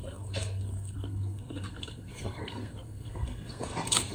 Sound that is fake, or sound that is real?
fake